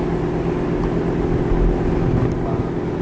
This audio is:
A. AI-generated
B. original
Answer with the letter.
B